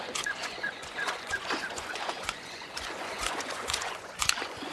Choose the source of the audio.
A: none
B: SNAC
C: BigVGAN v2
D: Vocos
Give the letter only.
D